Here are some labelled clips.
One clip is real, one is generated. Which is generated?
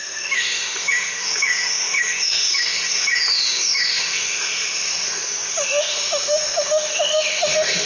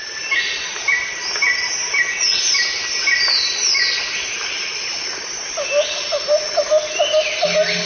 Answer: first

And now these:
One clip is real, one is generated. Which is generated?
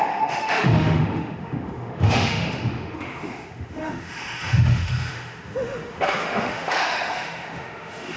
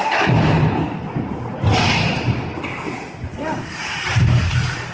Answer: first